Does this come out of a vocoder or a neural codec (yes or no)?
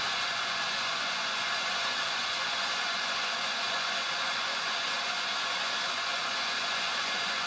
yes